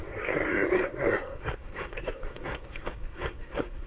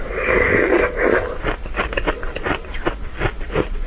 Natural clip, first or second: second